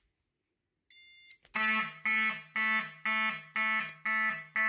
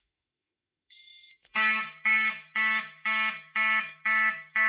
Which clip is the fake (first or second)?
second